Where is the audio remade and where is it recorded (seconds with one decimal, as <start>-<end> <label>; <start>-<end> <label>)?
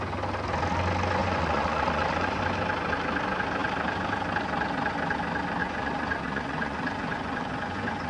0.0-1.2 recorded; 1.2-2.4 remade; 2.4-5.6 recorded; 5.6-8.1 remade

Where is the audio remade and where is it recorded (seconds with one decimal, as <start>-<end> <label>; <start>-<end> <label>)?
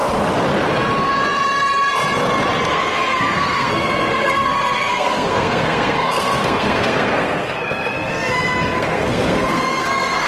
0.0-2.7 recorded; 2.7-10.3 remade